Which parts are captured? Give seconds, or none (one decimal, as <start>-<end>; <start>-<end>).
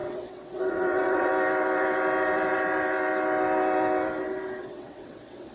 1.3-4.6